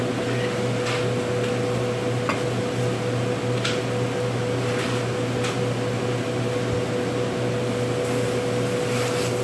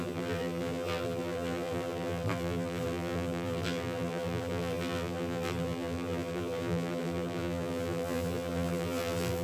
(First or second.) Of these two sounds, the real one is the first